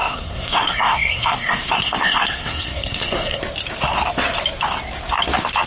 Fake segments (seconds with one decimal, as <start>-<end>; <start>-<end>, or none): 0.0-3.4